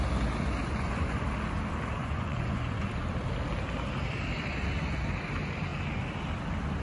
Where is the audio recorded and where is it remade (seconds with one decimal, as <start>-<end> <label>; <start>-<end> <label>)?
0.0-0.6 recorded; 0.6-1.3 remade; 1.3-2.0 recorded; 2.0-3.0 remade; 3.0-6.8 recorded